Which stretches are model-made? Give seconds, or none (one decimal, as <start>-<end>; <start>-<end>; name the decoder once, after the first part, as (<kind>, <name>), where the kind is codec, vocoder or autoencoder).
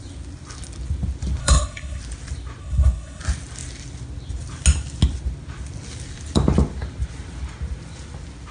1.4-2.0 (codec, HILCodec); 2.6-3.2